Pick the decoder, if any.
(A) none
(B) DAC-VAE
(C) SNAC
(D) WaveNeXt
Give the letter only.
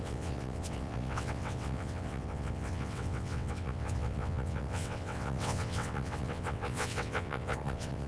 D